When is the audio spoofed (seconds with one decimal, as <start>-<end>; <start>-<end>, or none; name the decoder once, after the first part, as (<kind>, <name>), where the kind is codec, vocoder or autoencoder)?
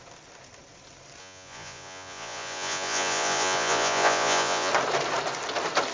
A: 1.2-4.7 (vocoder, Vocos)